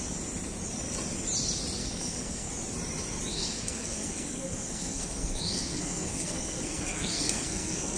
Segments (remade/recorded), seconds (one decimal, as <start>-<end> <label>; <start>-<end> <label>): 0.0-1.8 recorded; 1.8-2.5 remade; 2.5-3.3 recorded; 3.3-8.0 remade